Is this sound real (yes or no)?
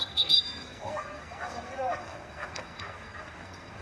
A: no